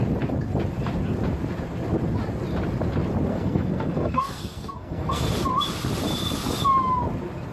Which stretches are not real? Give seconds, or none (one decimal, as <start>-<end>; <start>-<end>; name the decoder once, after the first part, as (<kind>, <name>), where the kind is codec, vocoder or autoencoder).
3.3-5.3 (codec, SNAC)